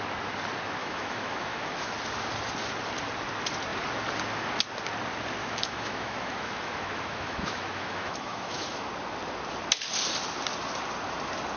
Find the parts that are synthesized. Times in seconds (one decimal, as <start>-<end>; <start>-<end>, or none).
0.8-1.9; 5.4-8.9